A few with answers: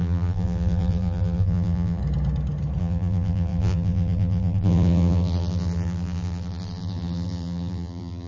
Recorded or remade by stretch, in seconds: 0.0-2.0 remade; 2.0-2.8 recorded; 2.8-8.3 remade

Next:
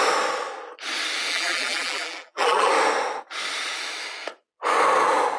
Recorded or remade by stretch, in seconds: 0.0-1.3 recorded; 1.3-2.7 remade; 2.7-5.4 recorded